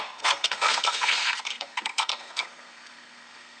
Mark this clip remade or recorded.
remade